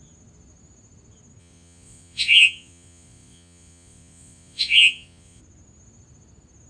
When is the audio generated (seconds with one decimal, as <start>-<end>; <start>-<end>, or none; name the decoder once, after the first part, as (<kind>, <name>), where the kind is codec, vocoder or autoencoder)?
1.4-5.4 (vocoder, Vocos)